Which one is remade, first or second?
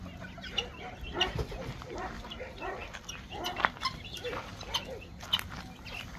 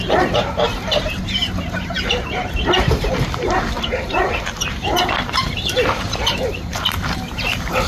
second